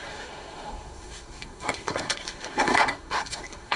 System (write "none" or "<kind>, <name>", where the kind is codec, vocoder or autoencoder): codec, SNAC